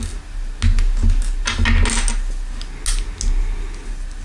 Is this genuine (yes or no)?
yes